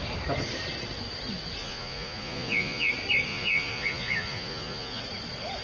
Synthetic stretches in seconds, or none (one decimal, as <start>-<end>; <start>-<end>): 1.6-2.9; 3.3-5.0